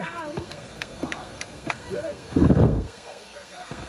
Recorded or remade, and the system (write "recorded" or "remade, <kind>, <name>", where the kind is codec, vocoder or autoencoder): remade, codec, SNAC